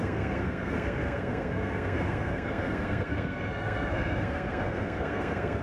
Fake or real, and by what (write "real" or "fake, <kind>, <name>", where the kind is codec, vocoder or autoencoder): fake, codec, SNAC